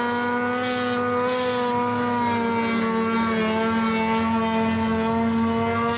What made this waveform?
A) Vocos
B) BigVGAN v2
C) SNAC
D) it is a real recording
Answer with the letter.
D